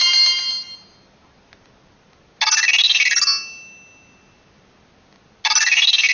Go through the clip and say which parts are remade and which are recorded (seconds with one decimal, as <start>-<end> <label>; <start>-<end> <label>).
0.0-6.1 recorded